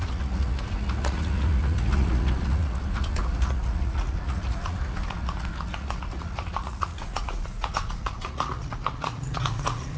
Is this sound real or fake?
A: fake